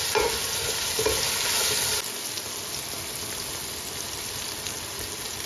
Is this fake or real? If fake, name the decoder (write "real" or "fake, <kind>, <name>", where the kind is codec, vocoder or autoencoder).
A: real